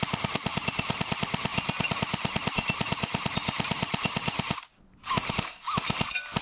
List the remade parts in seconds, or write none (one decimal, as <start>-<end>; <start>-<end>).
none